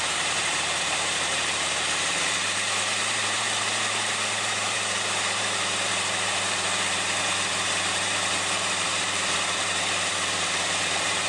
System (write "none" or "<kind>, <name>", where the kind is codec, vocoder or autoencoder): vocoder, BigVGAN v2